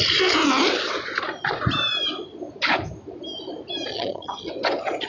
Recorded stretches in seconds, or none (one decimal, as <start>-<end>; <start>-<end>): 0.0-3.9; 4.5-5.1